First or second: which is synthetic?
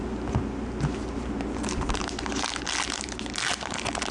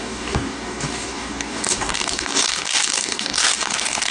second